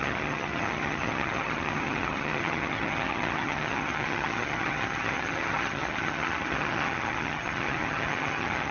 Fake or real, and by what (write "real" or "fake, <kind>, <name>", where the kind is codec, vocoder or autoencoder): fake, vocoder, HiFi-GAN